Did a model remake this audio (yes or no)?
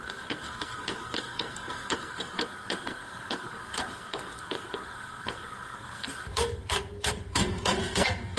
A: yes